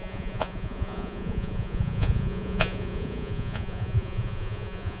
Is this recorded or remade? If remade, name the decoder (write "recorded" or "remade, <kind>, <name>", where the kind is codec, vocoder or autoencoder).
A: remade, vocoder, Vocos